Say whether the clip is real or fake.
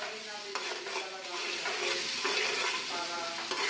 real